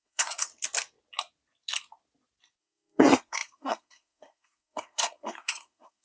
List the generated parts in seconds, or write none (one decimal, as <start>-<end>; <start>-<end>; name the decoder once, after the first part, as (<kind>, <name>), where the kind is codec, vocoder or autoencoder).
0.0-0.5 (codec, SNAC); 2.6-6.0